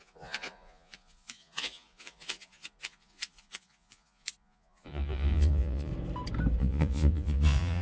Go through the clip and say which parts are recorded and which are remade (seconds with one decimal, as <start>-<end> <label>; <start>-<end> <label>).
0.0-5.9 remade; 5.9-6.6 recorded; 6.6-7.8 remade